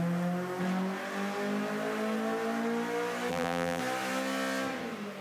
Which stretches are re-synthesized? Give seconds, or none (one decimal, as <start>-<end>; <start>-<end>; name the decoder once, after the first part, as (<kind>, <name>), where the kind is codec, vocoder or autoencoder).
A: 3.3-3.8 (vocoder, BigVGAN v2)